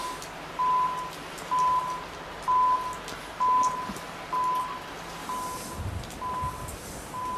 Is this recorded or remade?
recorded